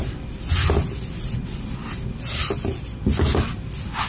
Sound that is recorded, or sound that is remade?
recorded